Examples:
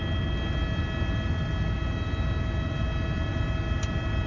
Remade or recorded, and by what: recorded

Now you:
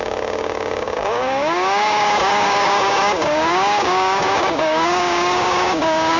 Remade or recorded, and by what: remade, codec, DAC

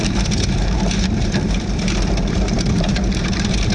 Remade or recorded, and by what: remade, vocoder, BigVGAN v2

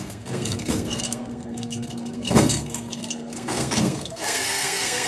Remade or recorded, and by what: remade, codec, SNAC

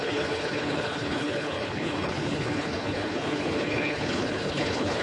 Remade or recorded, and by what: remade, codec, HILCodec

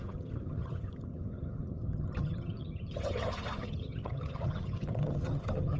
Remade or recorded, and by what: remade, vocoder, HiFi-GAN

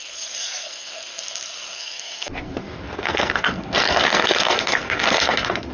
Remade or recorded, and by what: remade, codec, SNAC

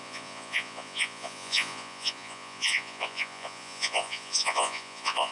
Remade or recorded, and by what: remade, vocoder, Vocos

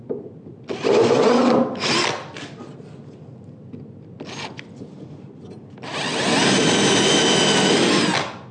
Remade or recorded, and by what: recorded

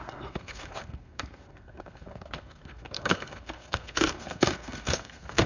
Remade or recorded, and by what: remade, codec, SNAC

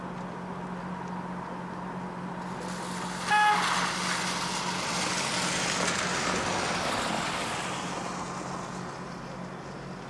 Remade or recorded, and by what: recorded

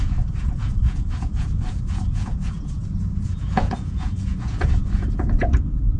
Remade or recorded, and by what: remade, vocoder, Vocos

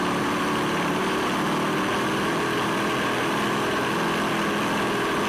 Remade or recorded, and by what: recorded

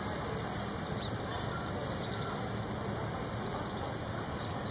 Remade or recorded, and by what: recorded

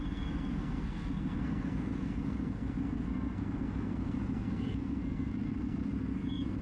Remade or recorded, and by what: remade, codec, SNAC